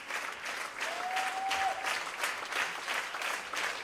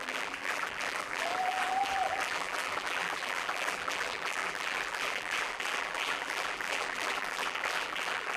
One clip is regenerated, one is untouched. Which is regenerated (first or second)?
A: second